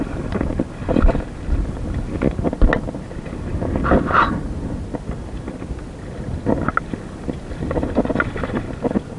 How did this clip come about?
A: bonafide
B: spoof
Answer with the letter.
A